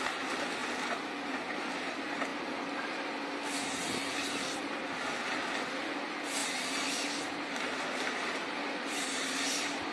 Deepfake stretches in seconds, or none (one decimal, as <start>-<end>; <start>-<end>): none